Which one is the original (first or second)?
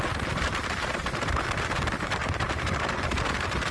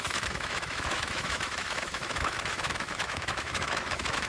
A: first